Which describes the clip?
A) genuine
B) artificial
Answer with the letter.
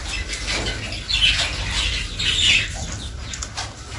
A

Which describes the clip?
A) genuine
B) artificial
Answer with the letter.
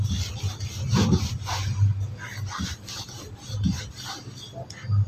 A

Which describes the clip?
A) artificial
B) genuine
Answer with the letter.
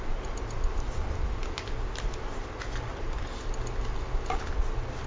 B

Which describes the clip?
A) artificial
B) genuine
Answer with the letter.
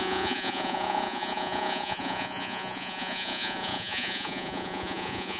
A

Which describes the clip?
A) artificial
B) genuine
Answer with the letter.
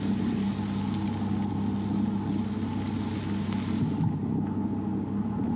B